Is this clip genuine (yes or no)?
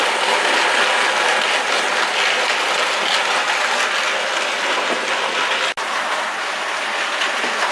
yes